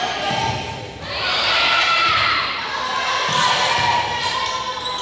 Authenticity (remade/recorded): recorded